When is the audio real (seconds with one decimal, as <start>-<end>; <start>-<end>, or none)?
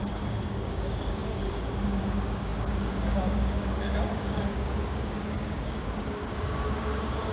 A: none